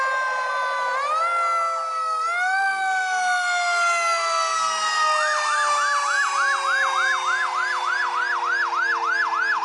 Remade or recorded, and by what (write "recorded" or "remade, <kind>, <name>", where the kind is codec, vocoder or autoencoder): recorded